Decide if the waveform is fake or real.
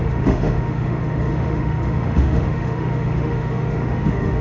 fake